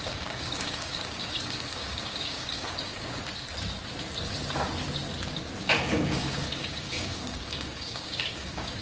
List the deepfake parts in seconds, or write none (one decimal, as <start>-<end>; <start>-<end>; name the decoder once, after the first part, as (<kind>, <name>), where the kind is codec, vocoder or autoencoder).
0.0-3.2 (codec, DAC); 5.6-8.8